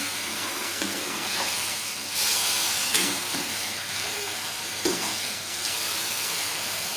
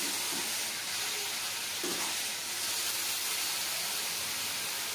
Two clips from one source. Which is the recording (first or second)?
second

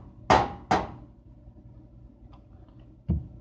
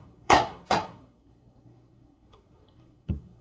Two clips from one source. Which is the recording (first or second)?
first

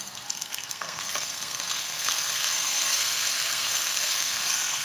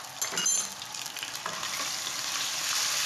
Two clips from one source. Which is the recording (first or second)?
second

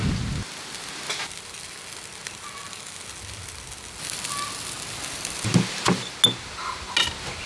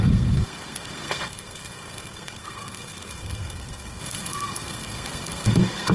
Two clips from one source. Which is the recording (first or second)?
first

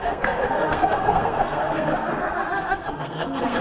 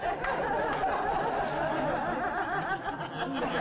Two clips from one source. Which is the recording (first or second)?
second